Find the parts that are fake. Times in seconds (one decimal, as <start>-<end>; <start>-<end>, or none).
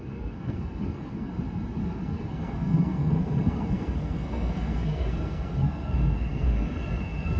0.0-1.3; 1.8-7.4